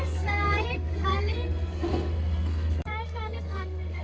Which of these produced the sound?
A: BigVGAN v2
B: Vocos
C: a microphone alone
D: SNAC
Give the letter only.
D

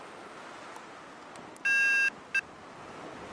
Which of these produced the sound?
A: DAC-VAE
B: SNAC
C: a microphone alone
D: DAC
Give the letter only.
C